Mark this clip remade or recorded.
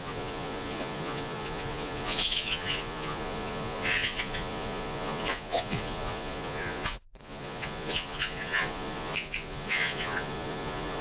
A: remade